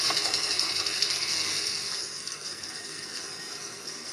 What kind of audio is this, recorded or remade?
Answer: remade